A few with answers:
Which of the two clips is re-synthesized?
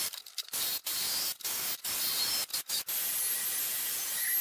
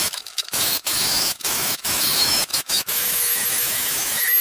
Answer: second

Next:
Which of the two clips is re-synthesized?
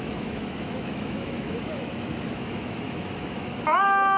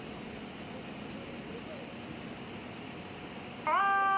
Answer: first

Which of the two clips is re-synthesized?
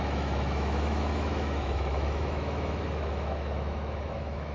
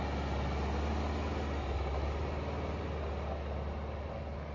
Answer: first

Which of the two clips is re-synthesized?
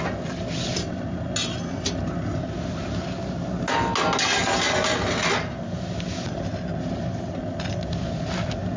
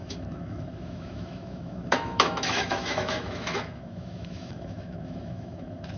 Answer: second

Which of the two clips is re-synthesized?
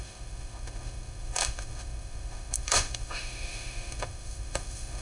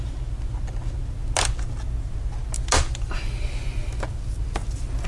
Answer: first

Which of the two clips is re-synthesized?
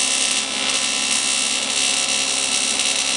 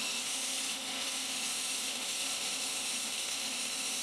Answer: second